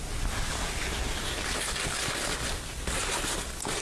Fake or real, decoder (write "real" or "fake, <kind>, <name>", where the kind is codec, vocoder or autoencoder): real